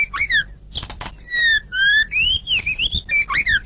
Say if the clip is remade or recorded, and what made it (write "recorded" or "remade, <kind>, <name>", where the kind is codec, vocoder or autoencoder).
recorded